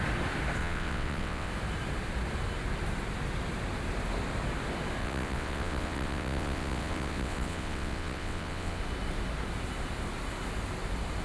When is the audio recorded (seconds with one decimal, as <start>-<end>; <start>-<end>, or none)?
0.0-0.6; 1.5-5.0; 8.8-11.2